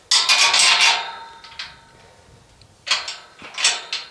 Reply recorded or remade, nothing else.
recorded